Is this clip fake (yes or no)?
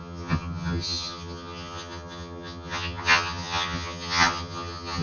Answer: yes